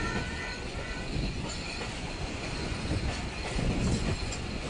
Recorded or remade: remade